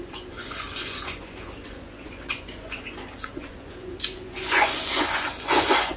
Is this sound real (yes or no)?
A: no